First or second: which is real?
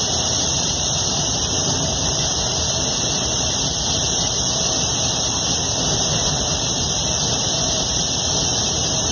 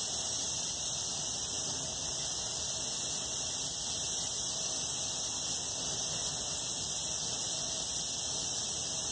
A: second